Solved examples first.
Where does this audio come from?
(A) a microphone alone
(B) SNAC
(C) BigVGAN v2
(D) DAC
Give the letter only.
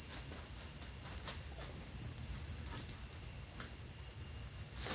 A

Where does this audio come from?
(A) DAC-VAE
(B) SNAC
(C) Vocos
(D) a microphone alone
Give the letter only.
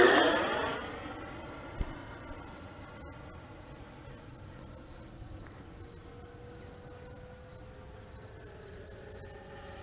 D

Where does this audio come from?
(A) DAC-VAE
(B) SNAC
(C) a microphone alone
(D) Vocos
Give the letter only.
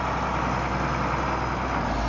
C